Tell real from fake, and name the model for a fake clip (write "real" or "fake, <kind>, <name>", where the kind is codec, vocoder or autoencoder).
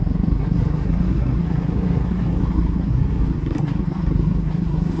fake, codec, SNAC